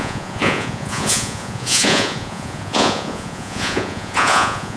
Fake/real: fake